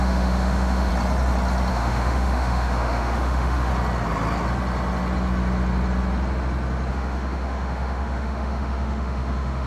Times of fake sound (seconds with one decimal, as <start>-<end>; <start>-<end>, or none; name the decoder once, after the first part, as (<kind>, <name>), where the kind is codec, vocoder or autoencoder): 0.0-0.9 (autoencoder, DAC-VAE); 1.7-3.7; 6.9-9.7